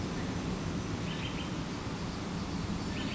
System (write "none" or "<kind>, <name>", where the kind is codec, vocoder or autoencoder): none